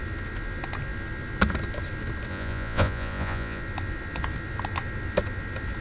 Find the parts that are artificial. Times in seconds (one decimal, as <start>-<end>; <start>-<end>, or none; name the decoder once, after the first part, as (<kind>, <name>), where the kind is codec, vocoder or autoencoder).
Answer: 2.3-3.6 (vocoder, Vocos)